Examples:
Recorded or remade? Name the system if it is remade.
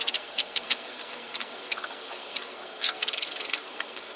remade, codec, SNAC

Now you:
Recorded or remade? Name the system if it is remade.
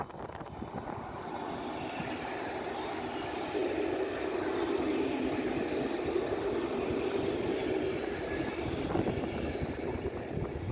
recorded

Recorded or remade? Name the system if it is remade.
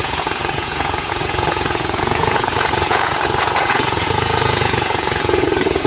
remade, vocoder, Vocos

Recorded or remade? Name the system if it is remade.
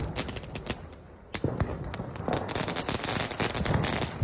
recorded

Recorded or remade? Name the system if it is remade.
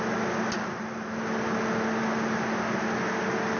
recorded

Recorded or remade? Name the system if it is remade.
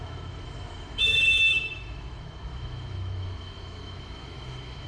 remade, autoencoder, DAC-VAE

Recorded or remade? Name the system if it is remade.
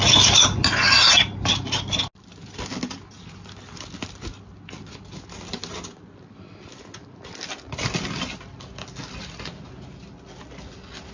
recorded